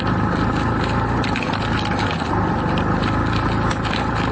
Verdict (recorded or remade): recorded